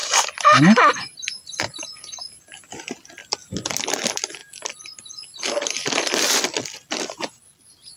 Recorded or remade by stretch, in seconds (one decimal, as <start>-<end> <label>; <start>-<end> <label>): 0.0-8.0 recorded